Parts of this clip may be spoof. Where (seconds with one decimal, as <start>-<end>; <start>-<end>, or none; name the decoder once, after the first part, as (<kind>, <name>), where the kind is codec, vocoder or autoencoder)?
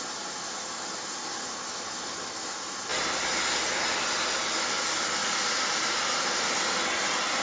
5.2-6.1 (vocoder, BigVGAN v2)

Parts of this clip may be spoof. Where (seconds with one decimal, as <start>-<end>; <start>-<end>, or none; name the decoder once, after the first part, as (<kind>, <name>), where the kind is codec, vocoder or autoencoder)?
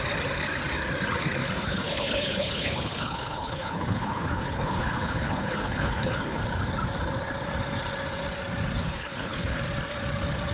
1.4-6.4 (codec, HILCodec); 8.8-9.6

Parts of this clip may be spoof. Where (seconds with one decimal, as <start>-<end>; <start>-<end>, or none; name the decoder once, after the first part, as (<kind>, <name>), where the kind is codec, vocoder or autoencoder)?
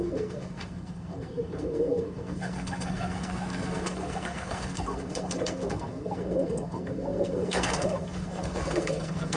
0.0-9.4 (codec, SNAC)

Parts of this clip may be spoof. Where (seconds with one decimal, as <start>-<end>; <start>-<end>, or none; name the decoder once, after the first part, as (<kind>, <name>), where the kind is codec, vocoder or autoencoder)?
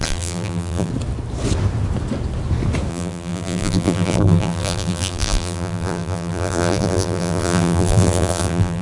0.0-0.9 (vocoder, BigVGAN v2); 2.9-8.8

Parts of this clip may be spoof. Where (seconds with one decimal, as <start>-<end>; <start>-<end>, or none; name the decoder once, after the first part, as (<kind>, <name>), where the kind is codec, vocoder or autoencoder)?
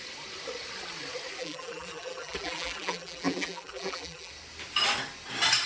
1.4-4.3 (vocoder, BigVGAN v2)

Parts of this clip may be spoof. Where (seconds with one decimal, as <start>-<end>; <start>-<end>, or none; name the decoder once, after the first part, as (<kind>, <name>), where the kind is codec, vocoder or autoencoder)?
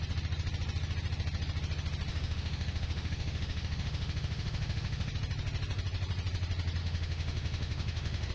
2.1-5.1 (autoencoder, DAC-VAE); 6.8-8.3